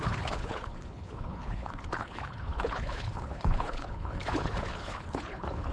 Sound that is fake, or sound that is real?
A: fake